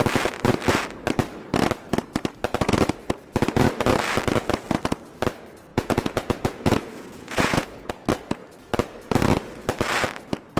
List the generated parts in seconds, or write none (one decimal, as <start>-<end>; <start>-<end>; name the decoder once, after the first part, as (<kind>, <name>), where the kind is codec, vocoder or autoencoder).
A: 5.7-7.9 (vocoder, Vocos)